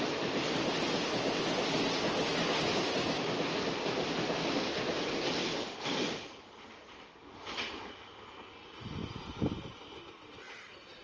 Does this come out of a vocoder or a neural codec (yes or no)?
no